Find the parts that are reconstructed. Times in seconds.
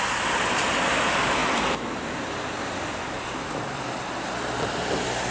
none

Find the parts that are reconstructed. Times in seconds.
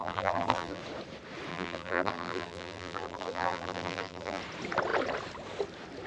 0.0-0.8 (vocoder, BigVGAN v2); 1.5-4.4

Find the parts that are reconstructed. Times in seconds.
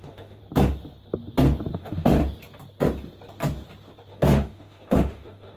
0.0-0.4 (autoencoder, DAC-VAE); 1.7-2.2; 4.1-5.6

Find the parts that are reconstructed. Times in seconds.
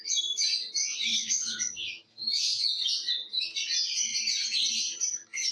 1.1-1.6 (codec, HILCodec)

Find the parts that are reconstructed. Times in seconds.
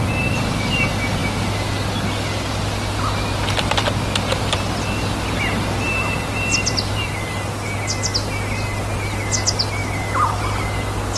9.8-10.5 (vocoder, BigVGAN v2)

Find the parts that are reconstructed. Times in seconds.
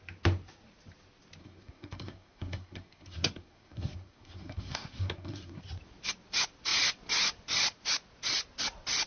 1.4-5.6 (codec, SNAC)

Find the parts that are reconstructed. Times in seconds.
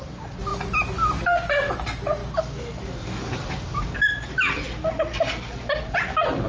none